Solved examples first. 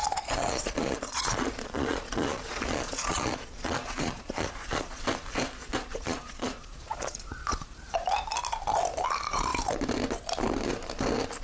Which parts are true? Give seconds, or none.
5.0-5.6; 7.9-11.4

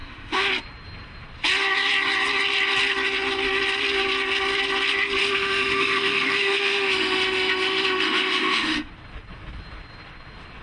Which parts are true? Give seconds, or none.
0.5-5.2; 8.9-10.6

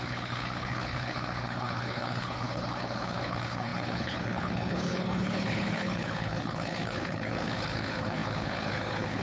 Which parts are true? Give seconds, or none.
none

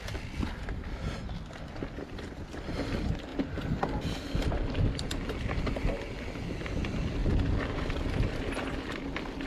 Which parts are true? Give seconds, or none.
0.0-9.5

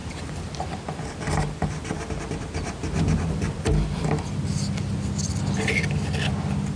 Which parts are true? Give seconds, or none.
4.1-6.8

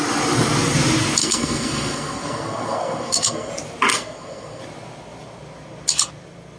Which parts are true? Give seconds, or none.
0.0-1.2; 3.5-3.9; 4.6-6.6

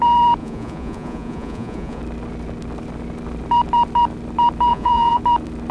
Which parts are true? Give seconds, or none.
0.0-0.4; 2.0-4.7; 5.2-5.7